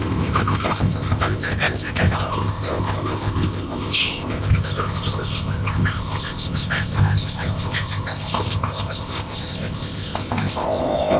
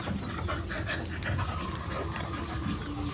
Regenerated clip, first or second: first